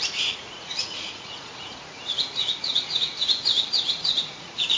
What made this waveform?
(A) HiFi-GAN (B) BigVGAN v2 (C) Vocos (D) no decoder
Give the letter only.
C